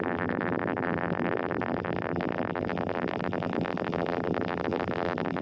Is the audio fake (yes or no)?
yes